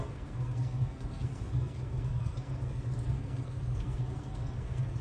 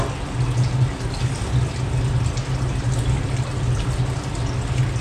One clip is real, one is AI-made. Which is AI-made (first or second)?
first